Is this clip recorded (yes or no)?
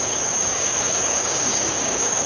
no